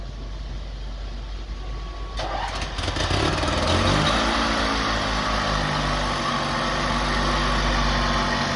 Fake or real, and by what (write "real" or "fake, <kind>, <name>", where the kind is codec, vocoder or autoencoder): real